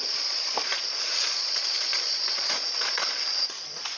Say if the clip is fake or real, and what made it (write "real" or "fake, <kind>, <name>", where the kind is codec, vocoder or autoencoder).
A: fake, vocoder, Vocos